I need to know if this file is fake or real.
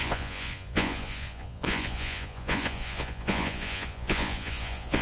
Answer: fake